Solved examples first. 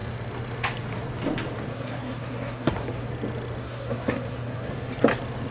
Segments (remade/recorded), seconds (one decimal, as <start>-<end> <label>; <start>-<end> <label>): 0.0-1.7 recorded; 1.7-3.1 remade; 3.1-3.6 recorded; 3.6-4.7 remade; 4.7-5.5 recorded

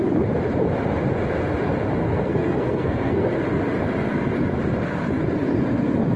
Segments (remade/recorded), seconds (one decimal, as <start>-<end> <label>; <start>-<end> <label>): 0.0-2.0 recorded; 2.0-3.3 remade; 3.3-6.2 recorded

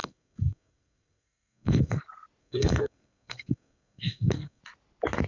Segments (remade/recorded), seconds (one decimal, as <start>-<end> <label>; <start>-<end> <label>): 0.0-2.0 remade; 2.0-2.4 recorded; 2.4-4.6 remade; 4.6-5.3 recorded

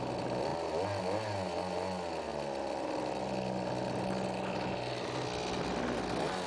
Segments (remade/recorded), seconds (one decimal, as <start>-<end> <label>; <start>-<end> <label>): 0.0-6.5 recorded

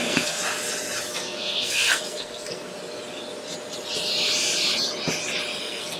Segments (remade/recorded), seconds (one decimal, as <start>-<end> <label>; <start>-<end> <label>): 0.0-0.4 remade; 0.4-1.1 recorded; 1.1-2.7 remade; 2.7-5.6 recorded; 5.6-6.0 remade